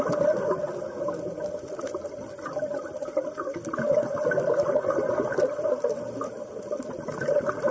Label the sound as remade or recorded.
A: recorded